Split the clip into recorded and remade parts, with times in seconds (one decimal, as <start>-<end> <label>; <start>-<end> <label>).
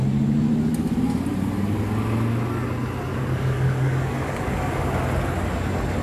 0.0-3.1 recorded; 3.1-5.1 remade; 5.1-6.0 recorded